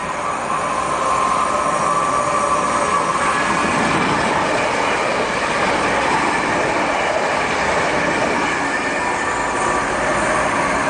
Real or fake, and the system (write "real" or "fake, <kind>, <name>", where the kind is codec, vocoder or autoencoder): real